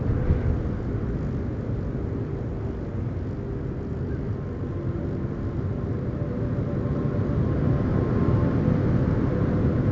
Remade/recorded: recorded